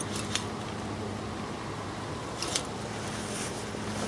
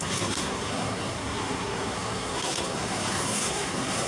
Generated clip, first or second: second